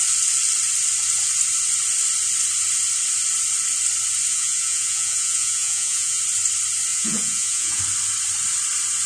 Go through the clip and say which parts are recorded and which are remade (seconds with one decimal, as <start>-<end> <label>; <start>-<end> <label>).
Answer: 0.0-4.3 recorded; 4.3-6.2 remade; 6.2-6.9 recorded; 6.9-7.8 remade; 7.8-9.1 recorded